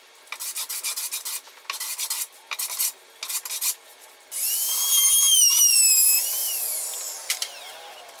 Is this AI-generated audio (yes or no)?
no